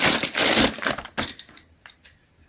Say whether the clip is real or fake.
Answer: real